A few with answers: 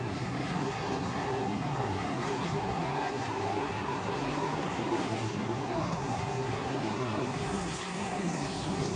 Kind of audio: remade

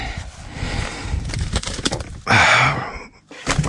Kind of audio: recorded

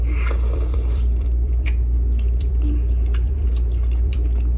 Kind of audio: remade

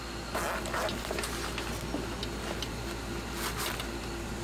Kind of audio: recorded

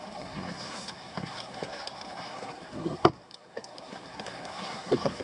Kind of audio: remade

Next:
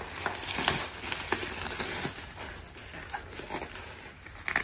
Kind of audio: recorded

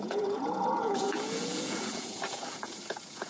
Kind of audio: remade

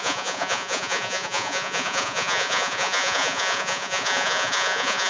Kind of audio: remade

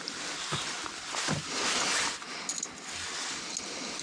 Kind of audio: recorded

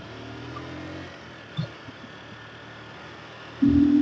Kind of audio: recorded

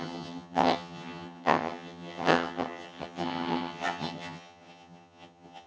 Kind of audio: remade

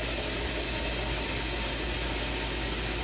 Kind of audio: recorded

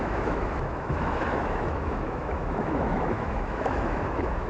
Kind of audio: remade